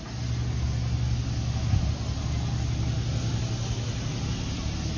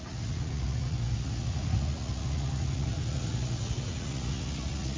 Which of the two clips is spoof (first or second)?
second